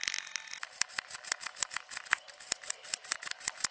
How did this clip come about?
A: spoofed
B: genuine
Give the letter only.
B